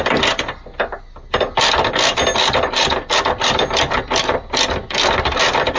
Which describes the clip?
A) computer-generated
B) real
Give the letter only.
B